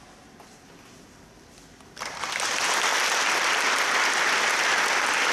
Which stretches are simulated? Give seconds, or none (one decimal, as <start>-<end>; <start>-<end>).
none